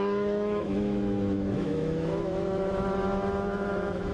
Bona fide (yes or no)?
no